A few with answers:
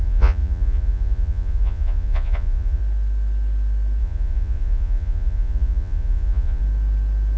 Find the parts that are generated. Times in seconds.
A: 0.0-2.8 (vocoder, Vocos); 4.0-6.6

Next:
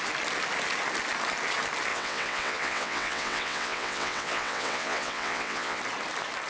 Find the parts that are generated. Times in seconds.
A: 1.9-5.8 (vocoder, WaveNeXt)